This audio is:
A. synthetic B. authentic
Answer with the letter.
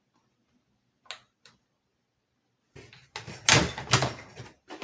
B